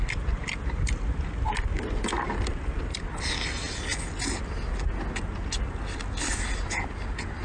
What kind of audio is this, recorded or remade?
recorded